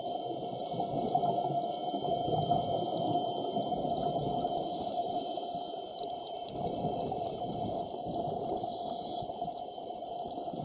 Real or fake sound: real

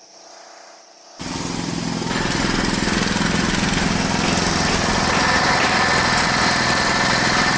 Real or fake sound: real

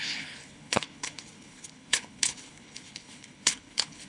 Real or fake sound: fake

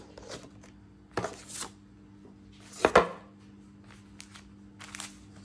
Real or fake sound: real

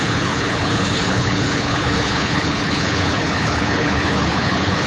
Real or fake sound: fake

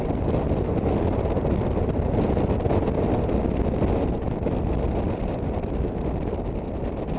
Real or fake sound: real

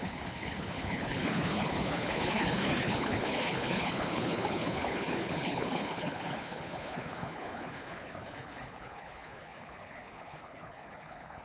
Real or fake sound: fake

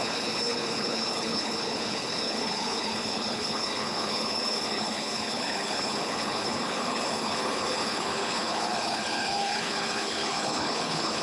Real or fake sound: fake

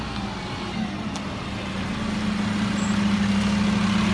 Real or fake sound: real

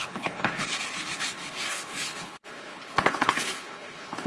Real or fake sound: fake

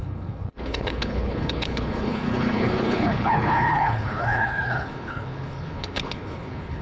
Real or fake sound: fake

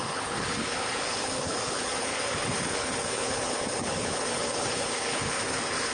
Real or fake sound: fake